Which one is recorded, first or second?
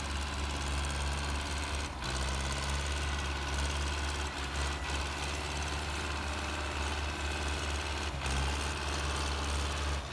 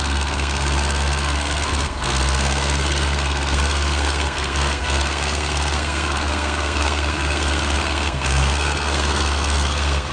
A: first